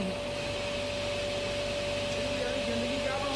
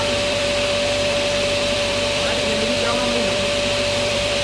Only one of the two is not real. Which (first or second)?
second